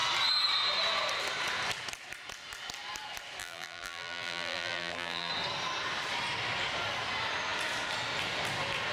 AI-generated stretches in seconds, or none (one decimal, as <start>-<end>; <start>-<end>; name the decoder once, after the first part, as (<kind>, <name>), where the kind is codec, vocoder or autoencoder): 3.4-5.3 (vocoder, BigVGAN v2)